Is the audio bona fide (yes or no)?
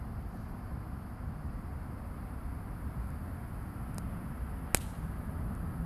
yes